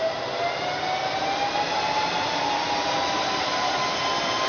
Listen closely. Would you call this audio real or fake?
real